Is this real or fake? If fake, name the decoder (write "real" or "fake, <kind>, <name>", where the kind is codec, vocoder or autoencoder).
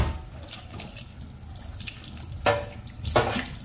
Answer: real